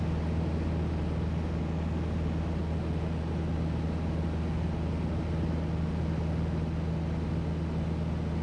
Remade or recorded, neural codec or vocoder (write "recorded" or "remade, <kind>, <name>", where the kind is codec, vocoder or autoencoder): recorded